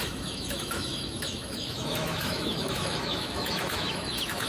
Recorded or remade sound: remade